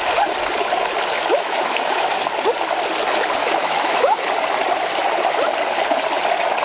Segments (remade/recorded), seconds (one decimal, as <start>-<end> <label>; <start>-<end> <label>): 0.0-1.3 recorded; 1.3-2.3 remade; 2.3-3.4 recorded; 3.4-4.3 remade; 4.3-6.6 recorded